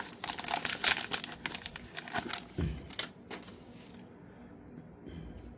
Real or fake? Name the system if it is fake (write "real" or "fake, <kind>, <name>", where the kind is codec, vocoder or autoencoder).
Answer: real